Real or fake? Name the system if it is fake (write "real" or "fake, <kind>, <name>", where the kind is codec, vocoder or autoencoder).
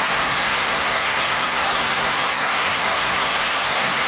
fake, codec, SNAC